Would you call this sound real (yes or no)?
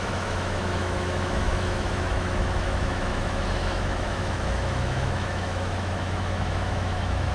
no